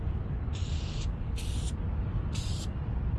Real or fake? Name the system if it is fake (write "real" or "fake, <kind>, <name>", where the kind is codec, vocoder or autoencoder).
real